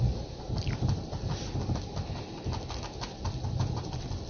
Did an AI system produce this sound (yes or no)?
yes